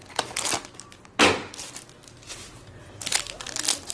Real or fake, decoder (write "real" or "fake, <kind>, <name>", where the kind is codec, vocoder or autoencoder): real